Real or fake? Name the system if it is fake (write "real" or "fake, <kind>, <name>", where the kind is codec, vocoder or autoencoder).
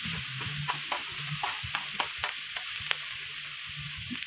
real